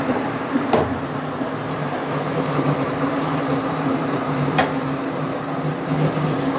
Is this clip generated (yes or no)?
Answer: yes